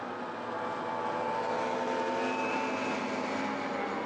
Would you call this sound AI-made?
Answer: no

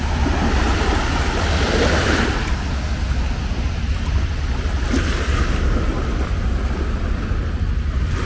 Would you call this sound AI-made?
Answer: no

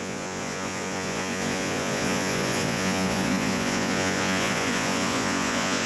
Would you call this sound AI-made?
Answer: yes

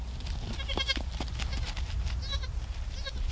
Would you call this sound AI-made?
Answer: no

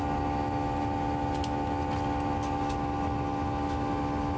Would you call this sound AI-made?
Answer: no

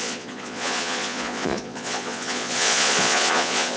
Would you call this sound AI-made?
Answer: yes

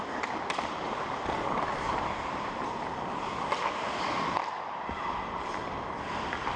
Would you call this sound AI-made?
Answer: no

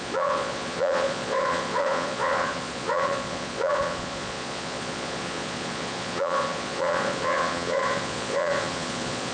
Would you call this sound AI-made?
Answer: yes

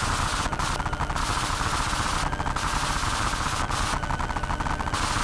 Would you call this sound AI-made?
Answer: no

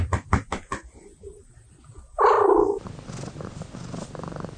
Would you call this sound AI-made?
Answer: no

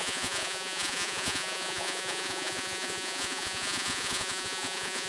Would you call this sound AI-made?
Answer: yes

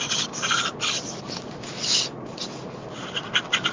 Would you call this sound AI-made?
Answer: no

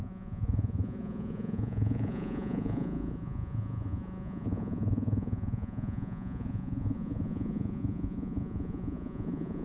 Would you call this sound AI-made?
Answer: yes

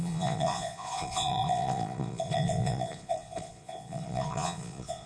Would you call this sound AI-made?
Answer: yes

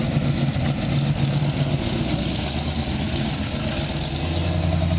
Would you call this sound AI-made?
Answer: no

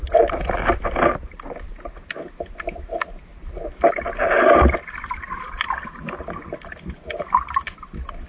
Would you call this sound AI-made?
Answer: no